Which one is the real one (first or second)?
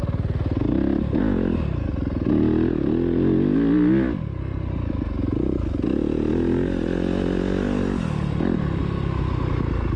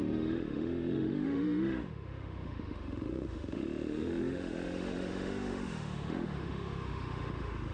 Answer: first